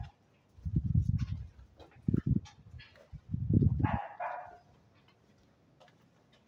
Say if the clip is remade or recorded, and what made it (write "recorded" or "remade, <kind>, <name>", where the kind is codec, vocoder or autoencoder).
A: recorded